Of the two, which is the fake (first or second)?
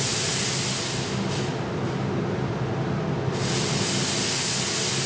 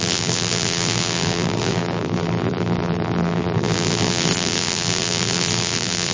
second